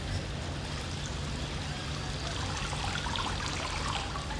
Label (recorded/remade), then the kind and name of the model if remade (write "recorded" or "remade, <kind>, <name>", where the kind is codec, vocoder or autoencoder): recorded